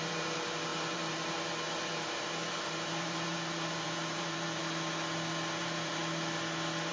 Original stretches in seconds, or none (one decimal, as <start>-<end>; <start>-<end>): 4.6-5.6; 6.0-6.9